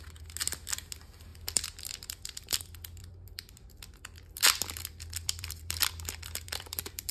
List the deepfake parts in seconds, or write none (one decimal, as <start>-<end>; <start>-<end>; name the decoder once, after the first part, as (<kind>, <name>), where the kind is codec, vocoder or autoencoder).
1.3-2.6 (vocoder, BigVGAN v2); 3.0-7.1